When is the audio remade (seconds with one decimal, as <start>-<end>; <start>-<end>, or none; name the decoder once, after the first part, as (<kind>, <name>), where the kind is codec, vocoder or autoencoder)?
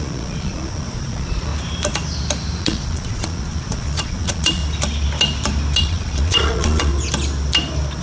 0.0-1.5 (vocoder, Vocos); 2.6-4.6; 5.8-6.9